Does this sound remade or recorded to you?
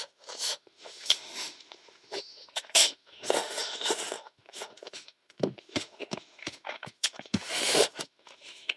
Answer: remade